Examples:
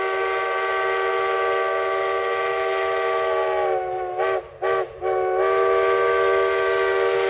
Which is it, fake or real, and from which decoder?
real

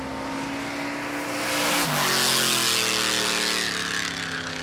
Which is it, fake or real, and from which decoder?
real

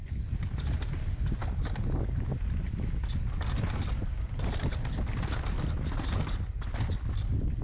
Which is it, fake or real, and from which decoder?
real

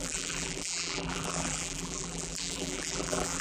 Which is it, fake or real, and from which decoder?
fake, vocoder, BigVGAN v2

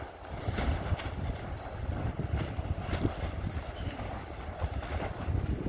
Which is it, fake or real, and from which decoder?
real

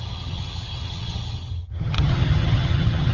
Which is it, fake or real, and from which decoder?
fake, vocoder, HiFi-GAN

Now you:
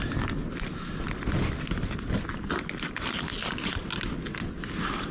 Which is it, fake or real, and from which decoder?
real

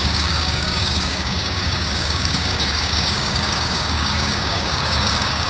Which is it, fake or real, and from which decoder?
fake, codec, DAC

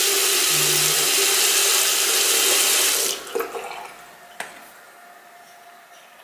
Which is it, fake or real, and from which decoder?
real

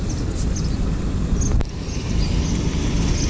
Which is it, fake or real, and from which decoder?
real